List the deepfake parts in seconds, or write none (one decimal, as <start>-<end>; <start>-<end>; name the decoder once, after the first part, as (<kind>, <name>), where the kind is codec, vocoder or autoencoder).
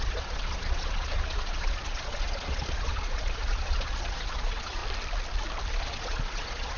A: 0.0-4.8 (vocoder, Vocos); 5.7-6.8